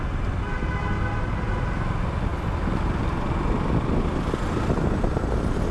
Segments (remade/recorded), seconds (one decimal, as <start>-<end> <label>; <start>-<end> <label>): 0.0-5.7 recorded